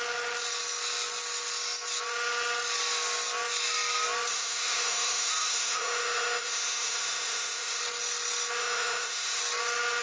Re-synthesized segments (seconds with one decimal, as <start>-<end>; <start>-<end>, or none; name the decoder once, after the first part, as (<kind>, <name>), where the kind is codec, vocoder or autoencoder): 4.3-7.8 (autoencoder, DAC-VAE); 8.6-9.4